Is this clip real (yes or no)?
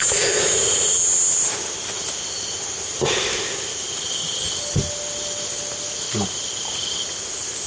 yes